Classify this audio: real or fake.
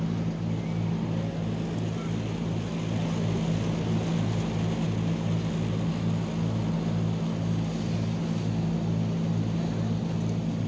real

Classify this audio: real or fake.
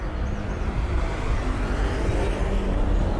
real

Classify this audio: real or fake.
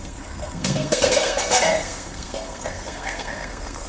fake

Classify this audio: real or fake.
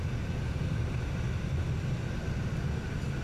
real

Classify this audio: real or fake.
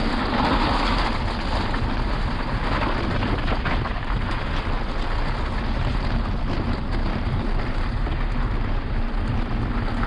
real